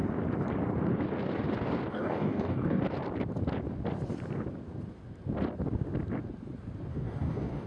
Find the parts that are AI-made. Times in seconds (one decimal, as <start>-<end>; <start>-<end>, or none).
1.9-2.8; 6.9-7.7